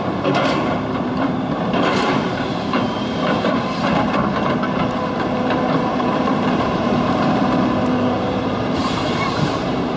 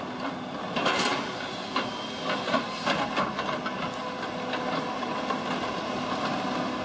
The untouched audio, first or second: second